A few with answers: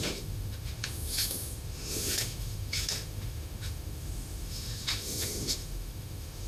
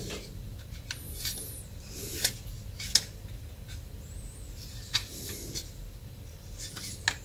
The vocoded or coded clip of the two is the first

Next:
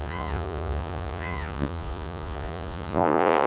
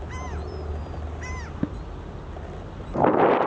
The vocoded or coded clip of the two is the first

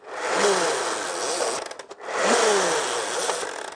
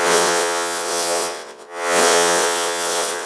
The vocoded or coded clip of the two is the second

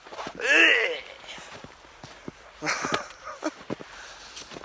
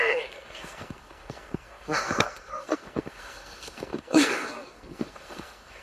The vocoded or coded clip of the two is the second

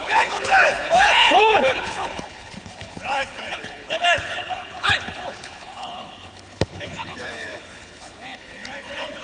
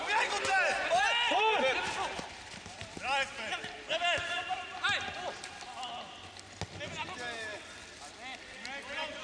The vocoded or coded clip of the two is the first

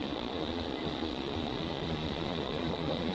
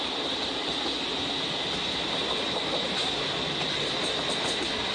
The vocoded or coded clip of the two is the first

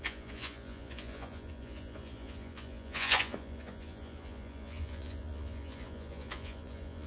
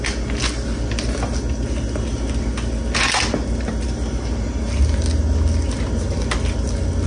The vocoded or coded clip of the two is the first